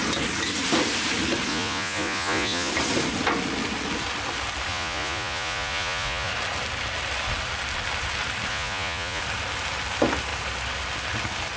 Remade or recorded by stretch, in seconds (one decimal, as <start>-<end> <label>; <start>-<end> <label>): 0.0-1.5 recorded; 1.5-2.7 remade; 2.7-4.7 recorded; 4.7-6.3 remade; 6.3-8.5 recorded; 8.5-9.2 remade; 9.2-11.6 recorded